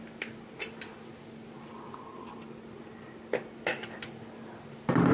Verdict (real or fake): real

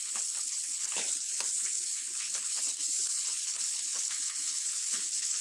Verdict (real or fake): fake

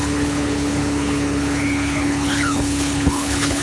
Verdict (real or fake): fake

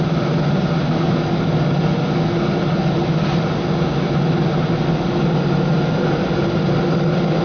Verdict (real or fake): real